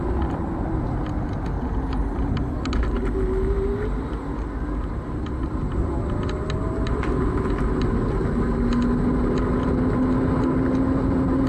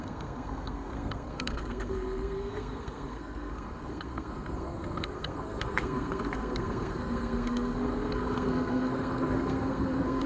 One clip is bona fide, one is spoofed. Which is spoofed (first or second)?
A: second